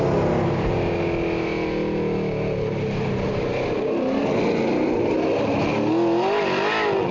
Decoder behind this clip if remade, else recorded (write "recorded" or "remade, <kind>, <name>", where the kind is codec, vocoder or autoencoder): recorded